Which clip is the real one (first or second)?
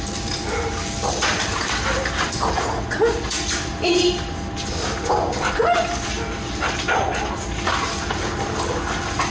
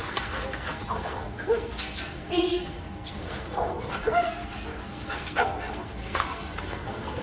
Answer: first